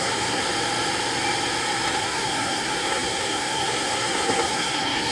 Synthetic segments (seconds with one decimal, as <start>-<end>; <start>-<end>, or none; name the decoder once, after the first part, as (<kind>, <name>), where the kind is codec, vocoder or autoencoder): 0.0-0.4 (codec, SNAC); 2.0-5.1